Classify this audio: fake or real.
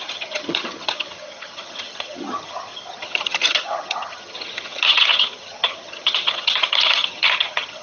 fake